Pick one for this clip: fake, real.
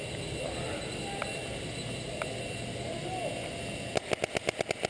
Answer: real